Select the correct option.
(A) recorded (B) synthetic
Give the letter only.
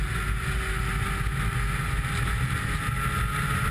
A